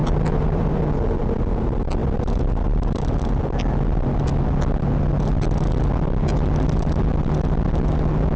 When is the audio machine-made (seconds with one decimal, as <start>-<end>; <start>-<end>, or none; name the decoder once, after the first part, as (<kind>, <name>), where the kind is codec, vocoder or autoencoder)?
0.0-0.8 (vocoder, BigVGAN v2)